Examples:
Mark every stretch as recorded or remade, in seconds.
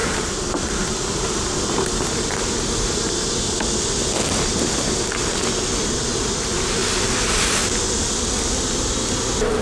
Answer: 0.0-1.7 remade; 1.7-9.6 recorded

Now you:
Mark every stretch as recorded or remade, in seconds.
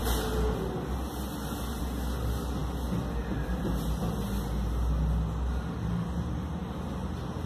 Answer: 0.0-7.5 recorded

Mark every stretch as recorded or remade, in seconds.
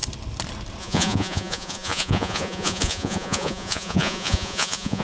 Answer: 0.0-0.8 recorded; 0.8-5.0 remade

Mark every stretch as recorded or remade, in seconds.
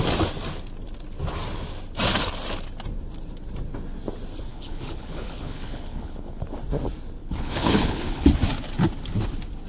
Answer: 0.0-4.5 recorded; 4.5-6.4 remade; 6.4-7.2 recorded; 7.2-8.3 remade; 8.3-9.7 recorded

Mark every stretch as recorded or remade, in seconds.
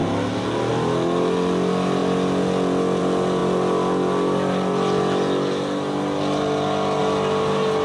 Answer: 0.0-7.8 recorded